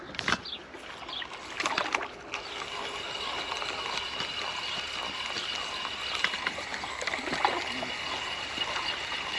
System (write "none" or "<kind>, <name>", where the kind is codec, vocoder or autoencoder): none